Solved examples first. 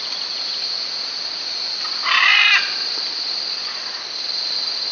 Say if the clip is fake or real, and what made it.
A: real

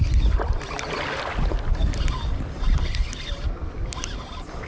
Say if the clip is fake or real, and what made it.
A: real